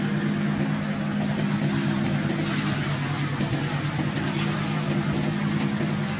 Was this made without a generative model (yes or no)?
yes